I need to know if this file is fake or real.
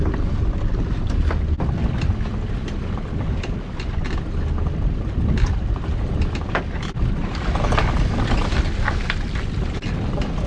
real